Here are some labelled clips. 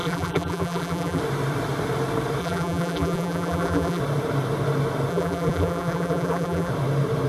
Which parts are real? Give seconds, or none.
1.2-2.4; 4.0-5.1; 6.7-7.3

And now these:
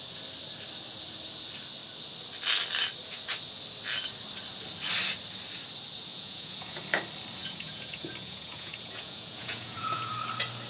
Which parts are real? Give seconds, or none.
0.0-6.1; 6.8-7.4; 10.1-10.7

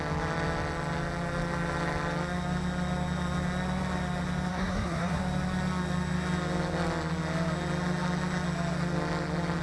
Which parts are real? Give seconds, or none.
0.0-4.5; 5.2-9.6

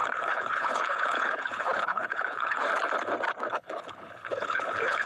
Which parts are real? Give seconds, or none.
2.7-3.5

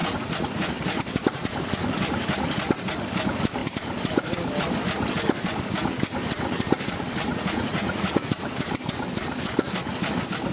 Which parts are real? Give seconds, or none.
0.7-7.3; 8.3-10.5